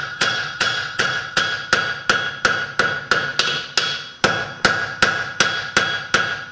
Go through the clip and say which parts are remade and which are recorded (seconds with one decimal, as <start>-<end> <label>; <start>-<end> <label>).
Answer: 0.0-1.4 remade; 1.4-6.5 recorded